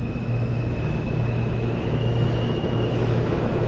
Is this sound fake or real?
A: fake